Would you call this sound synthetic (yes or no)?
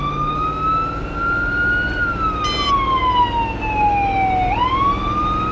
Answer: no